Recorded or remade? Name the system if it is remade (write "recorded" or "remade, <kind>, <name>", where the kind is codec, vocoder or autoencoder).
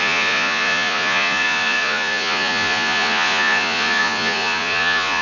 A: remade, vocoder, Vocos